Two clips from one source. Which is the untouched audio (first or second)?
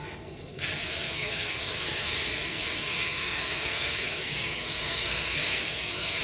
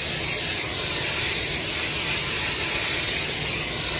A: second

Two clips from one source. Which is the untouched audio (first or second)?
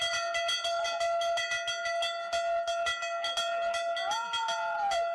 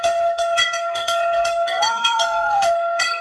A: first